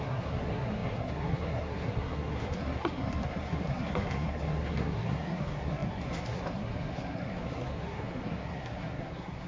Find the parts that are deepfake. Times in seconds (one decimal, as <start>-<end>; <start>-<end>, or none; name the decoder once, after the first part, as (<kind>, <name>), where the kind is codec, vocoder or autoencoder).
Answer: 0.0-9.5 (codec, SNAC)